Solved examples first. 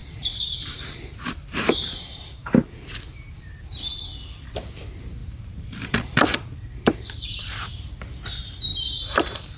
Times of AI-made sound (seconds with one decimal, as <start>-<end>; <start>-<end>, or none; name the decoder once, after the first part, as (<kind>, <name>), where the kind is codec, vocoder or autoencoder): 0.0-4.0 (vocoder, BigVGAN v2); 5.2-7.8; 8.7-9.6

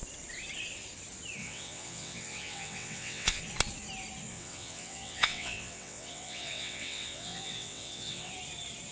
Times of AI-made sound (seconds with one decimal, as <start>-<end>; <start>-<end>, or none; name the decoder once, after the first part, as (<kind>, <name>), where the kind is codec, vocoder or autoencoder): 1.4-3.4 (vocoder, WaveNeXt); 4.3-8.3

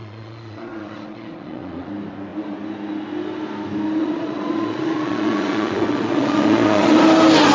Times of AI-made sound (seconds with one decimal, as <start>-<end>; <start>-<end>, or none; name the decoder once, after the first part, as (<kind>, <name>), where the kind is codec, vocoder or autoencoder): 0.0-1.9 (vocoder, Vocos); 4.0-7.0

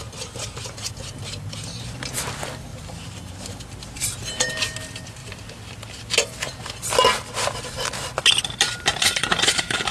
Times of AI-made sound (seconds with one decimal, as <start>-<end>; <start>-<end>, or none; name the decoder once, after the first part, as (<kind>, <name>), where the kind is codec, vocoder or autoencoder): 2.7-3.3 (vocoder, BigVGAN v2); 5.2-6.6; 8.9-9.9

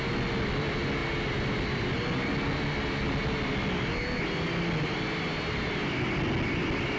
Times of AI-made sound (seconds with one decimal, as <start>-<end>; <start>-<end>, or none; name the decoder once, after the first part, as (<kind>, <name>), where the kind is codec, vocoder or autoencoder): none

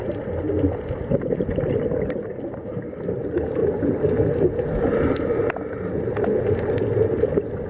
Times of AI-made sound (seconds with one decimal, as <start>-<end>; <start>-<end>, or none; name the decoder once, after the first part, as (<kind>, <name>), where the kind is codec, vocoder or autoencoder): none

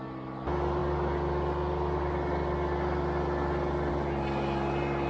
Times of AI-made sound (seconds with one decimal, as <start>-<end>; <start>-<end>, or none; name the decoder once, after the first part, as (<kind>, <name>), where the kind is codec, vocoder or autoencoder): none

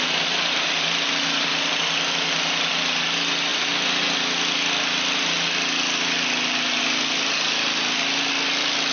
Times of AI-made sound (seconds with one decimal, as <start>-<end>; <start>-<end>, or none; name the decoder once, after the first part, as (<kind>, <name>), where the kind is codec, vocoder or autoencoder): none